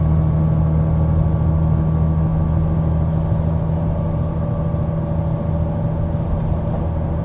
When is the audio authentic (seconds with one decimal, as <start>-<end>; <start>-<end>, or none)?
0.0-7.2